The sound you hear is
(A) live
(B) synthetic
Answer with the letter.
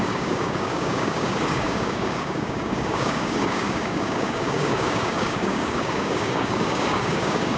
B